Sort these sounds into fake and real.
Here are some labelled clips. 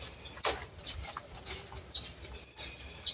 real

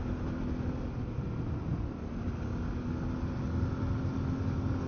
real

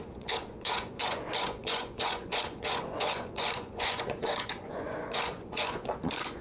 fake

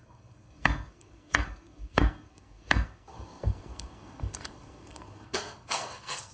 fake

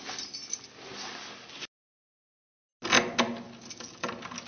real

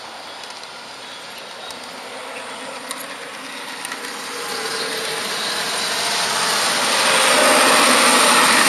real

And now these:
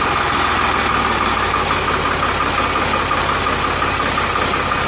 real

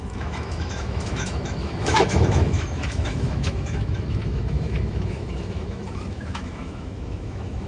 fake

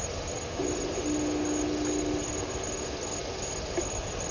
real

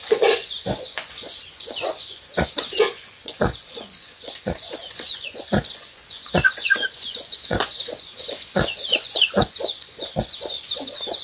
fake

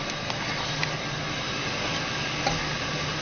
real